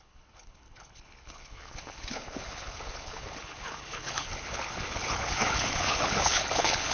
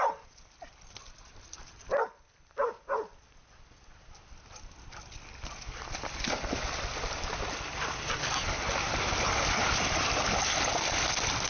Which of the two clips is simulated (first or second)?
first